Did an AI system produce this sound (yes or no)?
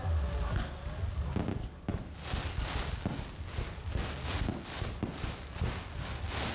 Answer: no